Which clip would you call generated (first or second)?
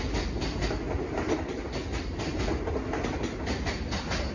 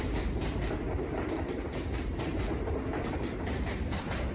second